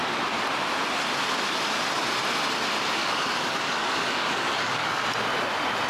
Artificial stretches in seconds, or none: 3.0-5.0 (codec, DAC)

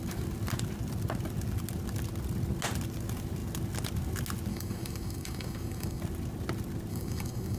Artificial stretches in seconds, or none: 4.5-6.0 (codec, DAC); 6.9-7.6

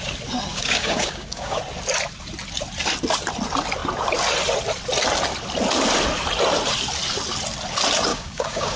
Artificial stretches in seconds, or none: 0.5-1.6 (codec, DAC); 8.1-8.8

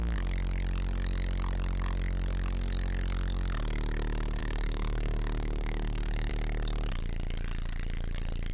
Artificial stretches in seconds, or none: 4.4-6.3 (codec, DAC)